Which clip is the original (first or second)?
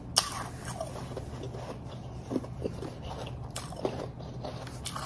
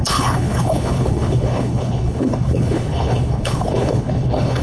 first